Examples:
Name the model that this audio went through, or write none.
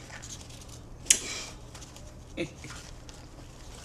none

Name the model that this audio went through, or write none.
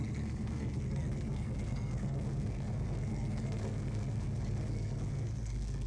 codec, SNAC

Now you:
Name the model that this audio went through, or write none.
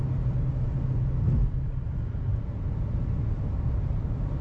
none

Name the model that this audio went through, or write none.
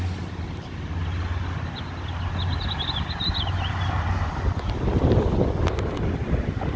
none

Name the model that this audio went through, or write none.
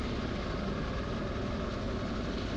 none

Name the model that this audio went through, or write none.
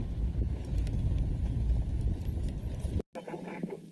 none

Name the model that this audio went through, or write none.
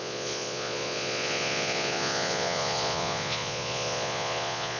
vocoder, Vocos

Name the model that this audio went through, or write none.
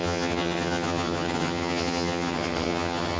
vocoder, HiFi-GAN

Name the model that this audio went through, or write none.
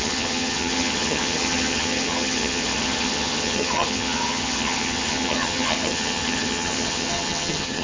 vocoder, HiFi-GAN